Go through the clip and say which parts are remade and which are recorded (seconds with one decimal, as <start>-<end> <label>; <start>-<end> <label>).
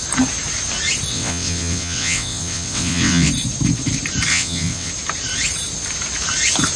0.0-1.1 recorded; 1.1-3.3 remade; 3.3-4.3 recorded; 4.3-4.9 remade; 4.9-6.8 recorded